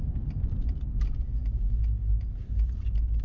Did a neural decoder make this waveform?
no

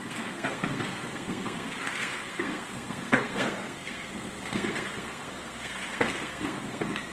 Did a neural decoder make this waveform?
yes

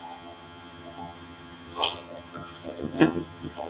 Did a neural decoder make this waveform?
yes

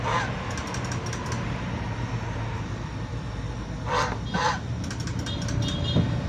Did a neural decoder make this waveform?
no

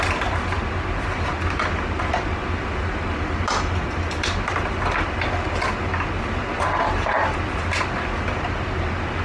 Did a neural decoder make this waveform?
no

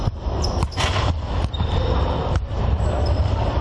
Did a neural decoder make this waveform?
yes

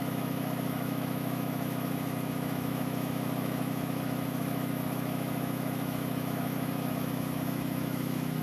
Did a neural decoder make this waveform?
yes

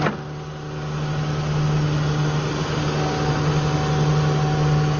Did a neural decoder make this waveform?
no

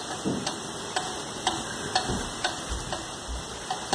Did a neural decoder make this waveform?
no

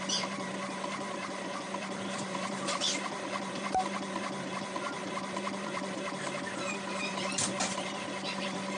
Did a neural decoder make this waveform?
yes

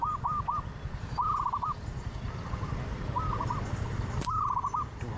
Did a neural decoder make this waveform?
yes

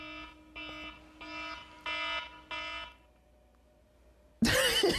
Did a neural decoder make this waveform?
no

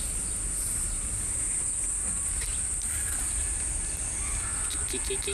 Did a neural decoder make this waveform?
no